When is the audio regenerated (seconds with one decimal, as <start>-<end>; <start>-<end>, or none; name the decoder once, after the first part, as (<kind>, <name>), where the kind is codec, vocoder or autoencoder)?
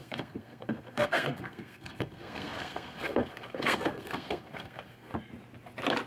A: 0.0-5.1 (codec, SNAC)